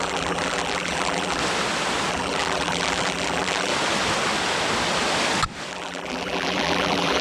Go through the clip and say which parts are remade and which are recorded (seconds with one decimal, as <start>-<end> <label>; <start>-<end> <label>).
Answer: 0.0-1.4 remade; 1.4-2.1 recorded; 2.1-3.7 remade; 3.7-5.7 recorded; 5.7-7.2 remade